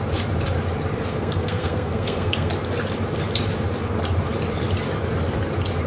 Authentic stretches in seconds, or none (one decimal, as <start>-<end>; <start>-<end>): 0.0-1.1; 2.5-5.9